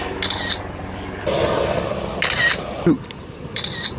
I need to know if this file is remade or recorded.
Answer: recorded